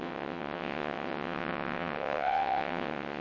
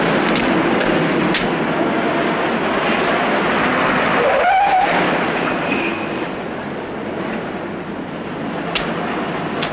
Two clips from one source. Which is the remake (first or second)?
first